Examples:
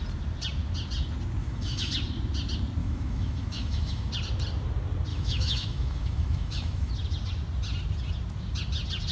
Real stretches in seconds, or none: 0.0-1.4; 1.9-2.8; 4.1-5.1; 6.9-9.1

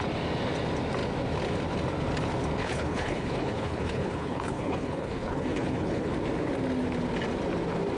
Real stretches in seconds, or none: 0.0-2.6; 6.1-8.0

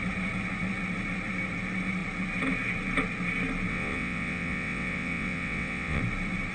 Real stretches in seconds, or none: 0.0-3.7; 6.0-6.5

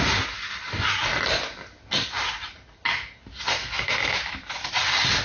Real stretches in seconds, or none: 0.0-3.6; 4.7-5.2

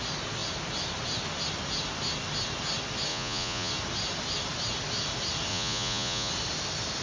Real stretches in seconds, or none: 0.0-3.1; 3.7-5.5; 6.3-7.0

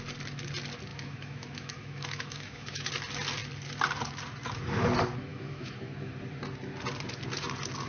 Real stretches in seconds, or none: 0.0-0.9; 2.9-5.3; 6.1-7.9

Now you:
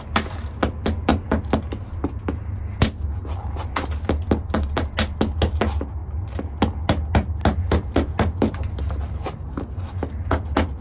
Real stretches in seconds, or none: 0.0-6.0; 6.5-10.8

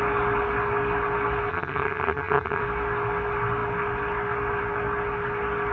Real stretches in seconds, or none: 0.0-1.5; 2.6-5.7